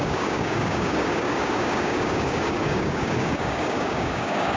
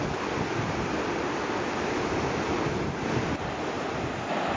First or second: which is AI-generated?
first